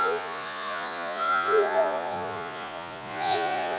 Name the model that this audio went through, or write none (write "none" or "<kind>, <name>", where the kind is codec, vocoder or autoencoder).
vocoder, Vocos